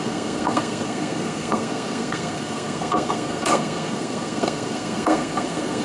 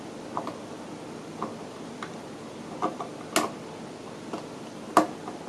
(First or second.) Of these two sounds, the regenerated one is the first